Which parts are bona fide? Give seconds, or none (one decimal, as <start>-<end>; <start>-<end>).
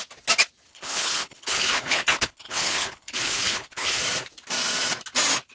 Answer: 0.0-0.7; 4.0-5.5